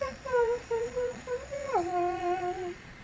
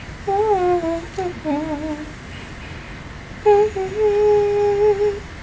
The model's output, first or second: first